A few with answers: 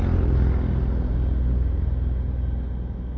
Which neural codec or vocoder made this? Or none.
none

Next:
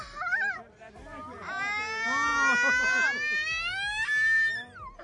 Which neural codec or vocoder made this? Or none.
none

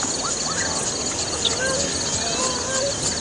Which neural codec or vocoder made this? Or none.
none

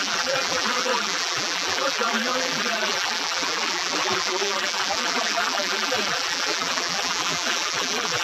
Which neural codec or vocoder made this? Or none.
vocoder, BigVGAN v2